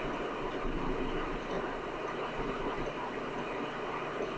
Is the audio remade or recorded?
recorded